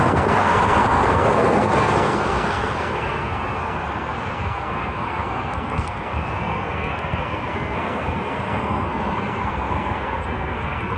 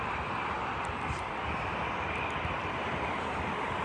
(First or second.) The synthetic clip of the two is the first